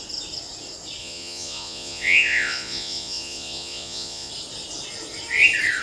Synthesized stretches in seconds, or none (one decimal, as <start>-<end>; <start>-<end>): 1.0-4.3